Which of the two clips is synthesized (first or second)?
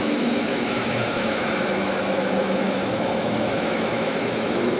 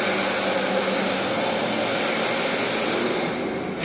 first